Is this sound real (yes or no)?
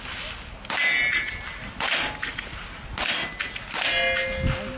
yes